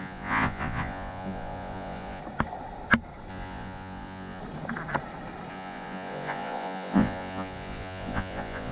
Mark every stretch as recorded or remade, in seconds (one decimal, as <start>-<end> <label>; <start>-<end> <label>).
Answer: 0.0-2.2 remade; 2.2-3.3 recorded; 3.3-4.4 remade; 4.4-5.5 recorded; 5.5-8.7 remade